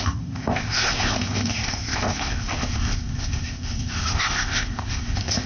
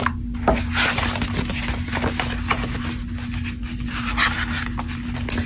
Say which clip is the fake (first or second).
first